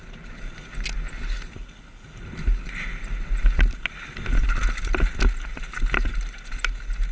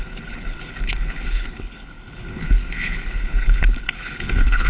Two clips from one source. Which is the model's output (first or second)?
second